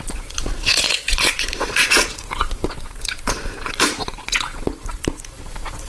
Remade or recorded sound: remade